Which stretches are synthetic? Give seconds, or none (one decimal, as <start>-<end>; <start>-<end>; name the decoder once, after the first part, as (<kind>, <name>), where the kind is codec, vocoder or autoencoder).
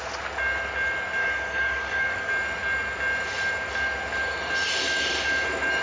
1.2-2.3 (codec, DAC)